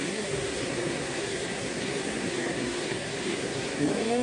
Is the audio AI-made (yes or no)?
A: yes